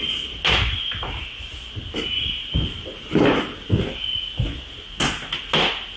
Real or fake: real